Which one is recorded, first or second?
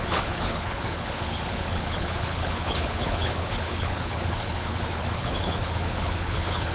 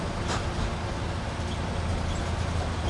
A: second